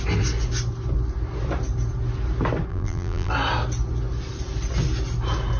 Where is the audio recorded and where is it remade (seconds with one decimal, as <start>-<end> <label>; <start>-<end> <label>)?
0.0-2.7 recorded; 2.7-3.3 remade; 3.3-5.6 recorded